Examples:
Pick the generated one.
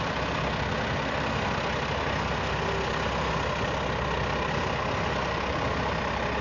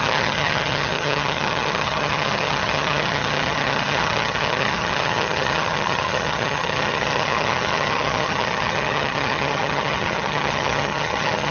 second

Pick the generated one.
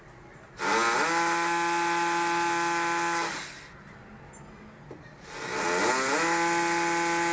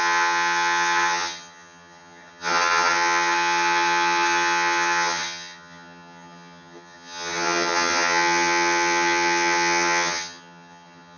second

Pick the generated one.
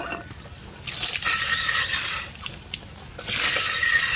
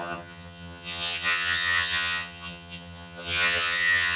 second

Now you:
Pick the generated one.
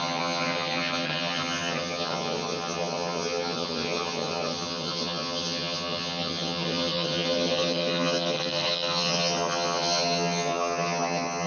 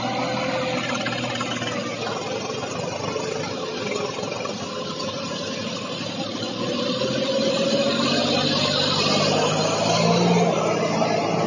first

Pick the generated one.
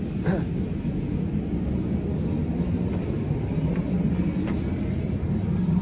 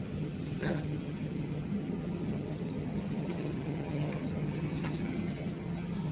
second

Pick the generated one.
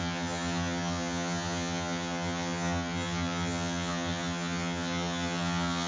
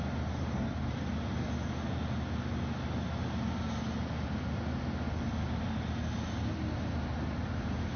first